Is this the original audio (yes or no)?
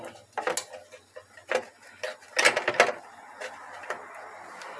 yes